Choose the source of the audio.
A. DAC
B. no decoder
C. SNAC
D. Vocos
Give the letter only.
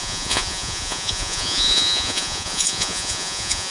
D